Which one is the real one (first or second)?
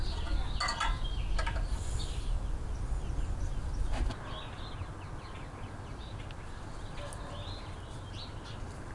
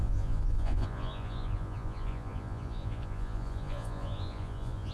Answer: first